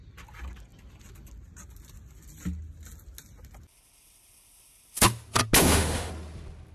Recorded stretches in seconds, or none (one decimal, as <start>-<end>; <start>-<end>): 0.0-5.6; 6.1-6.7